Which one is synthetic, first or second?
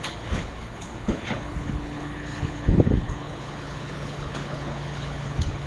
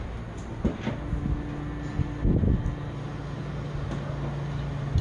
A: first